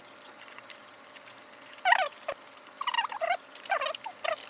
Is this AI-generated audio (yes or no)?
no